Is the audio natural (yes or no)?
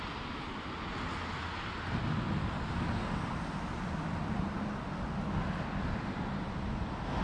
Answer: yes